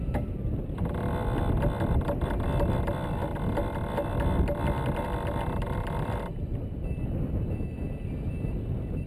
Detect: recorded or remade recorded